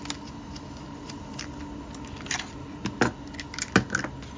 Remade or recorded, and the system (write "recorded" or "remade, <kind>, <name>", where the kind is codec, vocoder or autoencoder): recorded